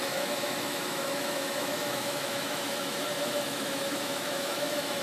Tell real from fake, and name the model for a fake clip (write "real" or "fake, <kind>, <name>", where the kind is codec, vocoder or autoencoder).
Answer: fake, autoencoder, DAC-VAE